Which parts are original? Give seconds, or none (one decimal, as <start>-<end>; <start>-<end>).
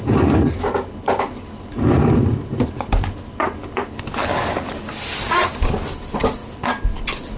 0.0-7.4